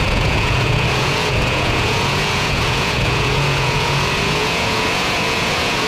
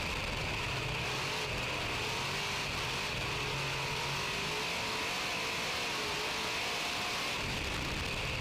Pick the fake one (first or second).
first